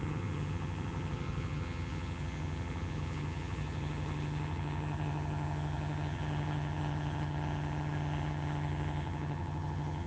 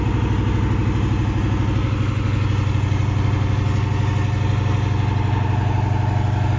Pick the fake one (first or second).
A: first